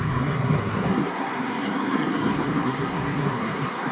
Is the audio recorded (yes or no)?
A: no